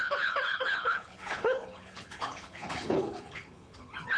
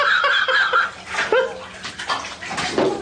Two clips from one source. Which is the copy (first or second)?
first